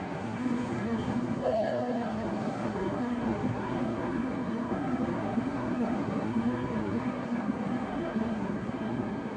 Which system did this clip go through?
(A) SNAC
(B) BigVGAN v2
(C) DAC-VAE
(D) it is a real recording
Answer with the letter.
A